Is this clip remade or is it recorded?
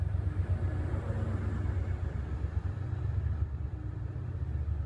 recorded